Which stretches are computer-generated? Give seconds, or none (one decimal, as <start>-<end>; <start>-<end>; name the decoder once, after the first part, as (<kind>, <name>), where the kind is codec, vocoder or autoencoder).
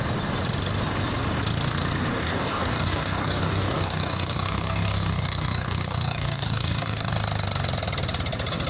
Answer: 2.1-7.1 (codec, DAC)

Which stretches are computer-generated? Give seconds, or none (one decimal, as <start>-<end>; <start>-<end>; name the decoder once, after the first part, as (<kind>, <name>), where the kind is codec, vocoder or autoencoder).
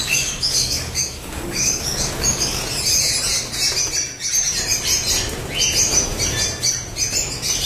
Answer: 0.0-2.6 (codec, DAC)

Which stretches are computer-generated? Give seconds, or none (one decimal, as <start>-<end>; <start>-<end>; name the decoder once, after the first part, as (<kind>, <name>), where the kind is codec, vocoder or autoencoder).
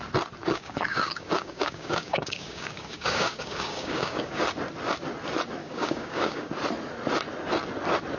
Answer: 0.4-4.4 (codec, DAC); 5.6-6.5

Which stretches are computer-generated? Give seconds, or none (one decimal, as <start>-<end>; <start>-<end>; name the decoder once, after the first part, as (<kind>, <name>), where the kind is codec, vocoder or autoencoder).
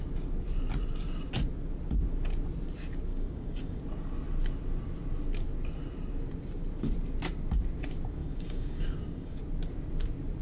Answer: 3.1-3.8 (codec, DAC); 8.2-9.4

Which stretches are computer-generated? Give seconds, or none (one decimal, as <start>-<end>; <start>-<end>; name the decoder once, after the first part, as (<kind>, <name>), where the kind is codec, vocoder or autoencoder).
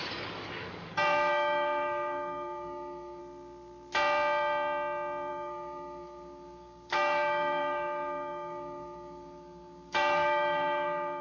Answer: 0.0-3.2 (codec, DAC); 5.3-11.2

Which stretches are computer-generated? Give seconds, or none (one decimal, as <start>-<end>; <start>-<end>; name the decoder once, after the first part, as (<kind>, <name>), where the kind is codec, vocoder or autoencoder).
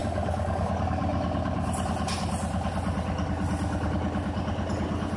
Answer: 0.0-0.7 (codec, DAC)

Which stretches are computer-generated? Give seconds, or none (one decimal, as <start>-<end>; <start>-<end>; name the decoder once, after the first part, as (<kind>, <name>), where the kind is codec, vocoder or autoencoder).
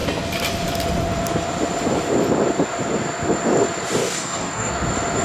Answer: 4.0-4.7 (codec, DAC)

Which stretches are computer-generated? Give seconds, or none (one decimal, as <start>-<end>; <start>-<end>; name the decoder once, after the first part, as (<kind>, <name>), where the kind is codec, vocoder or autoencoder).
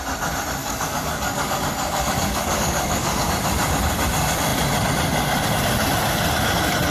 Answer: 0.6-3.3 (codec, DAC)